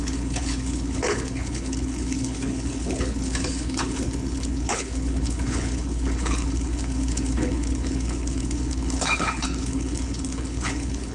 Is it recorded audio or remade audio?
remade